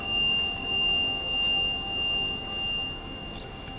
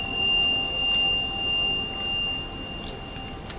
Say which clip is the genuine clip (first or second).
second